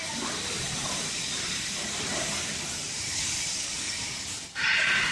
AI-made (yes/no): no